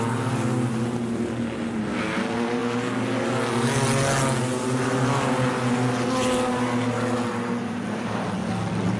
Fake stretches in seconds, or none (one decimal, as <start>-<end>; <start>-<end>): none